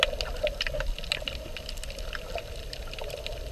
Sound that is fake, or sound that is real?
real